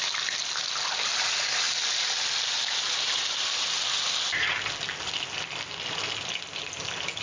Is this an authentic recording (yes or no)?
yes